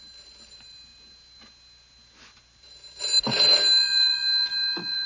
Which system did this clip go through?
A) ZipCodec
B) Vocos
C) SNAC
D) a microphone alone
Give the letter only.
D